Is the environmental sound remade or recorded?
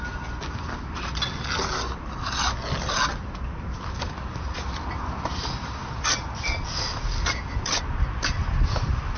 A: recorded